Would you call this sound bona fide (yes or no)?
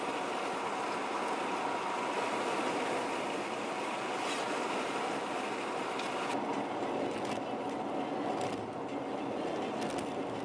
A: yes